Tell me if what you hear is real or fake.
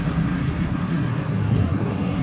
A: fake